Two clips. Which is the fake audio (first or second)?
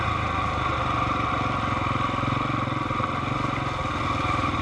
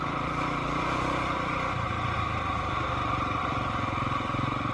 second